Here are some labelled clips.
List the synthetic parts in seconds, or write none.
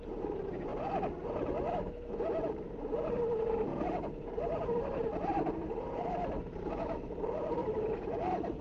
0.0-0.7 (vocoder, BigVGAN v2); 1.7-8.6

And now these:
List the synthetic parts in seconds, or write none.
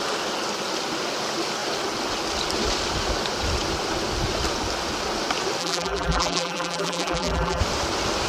5.6-7.6 (vocoder, BigVGAN v2)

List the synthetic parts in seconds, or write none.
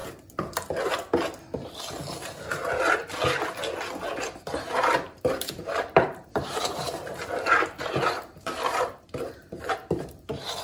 4.6-10.6 (vocoder, BigVGAN v2)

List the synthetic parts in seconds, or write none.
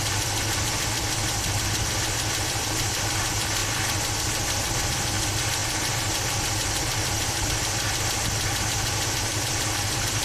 none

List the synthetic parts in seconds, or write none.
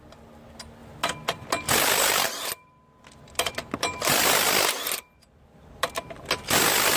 0.0-0.8 (vocoder, BigVGAN v2); 1.7-7.0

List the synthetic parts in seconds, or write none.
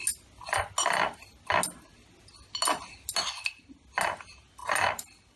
4.6-5.4 (vocoder, BigVGAN v2)